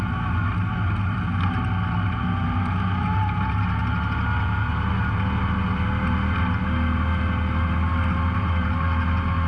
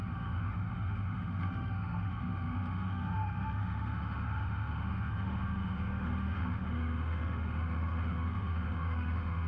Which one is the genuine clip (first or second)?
first